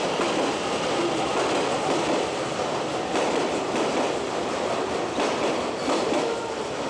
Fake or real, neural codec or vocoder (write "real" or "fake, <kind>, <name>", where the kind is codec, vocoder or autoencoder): real